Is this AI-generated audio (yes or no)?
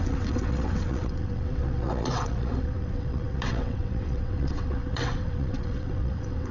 yes